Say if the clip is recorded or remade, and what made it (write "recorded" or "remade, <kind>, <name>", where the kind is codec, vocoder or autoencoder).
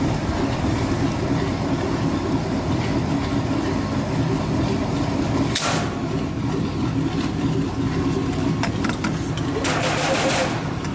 recorded